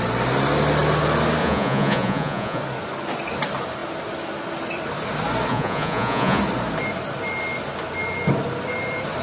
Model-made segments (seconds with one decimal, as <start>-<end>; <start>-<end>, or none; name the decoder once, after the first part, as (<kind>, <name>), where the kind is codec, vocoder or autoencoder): 1.4-2.6 (vocoder, Vocos); 5.5-6.4